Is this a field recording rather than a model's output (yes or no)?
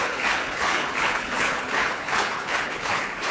no